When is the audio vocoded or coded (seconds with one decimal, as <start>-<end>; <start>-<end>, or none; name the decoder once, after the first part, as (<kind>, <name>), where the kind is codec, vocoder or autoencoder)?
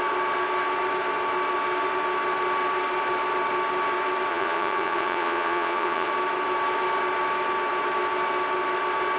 4.3-6.1 (vocoder, Vocos)